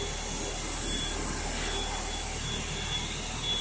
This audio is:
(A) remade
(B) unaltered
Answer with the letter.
B